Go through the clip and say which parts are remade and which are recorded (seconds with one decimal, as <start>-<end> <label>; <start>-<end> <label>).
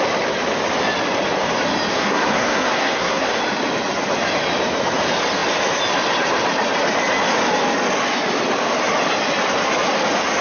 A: 0.0-1.9 recorded; 1.9-3.4 remade; 3.4-10.4 recorded